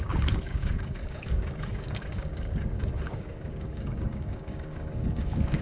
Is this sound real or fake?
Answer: fake